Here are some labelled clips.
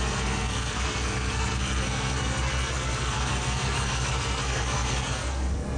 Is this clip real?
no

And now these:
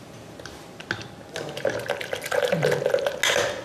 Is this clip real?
yes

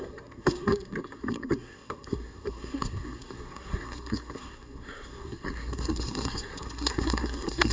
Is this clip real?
no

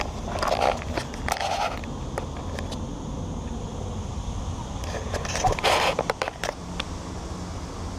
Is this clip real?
yes